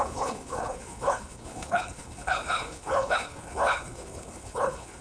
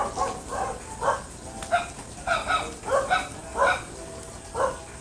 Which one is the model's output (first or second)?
first